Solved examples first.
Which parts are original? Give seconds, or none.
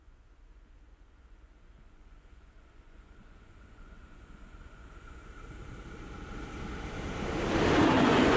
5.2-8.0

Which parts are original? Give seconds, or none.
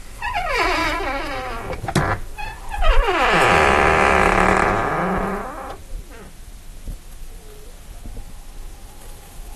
0.0-9.6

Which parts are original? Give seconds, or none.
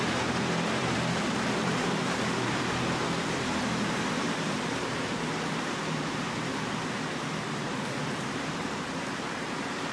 3.0-3.7; 6.5-7.4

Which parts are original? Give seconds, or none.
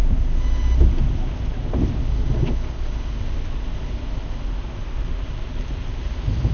0.0-4.8; 6.1-6.5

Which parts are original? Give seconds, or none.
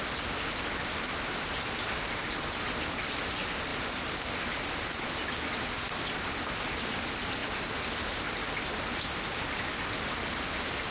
0.0-10.9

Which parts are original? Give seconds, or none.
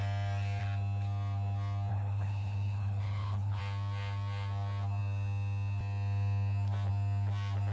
0.0-1.9; 3.6-7.7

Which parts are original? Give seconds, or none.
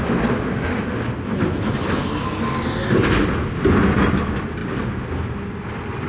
0.0-6.1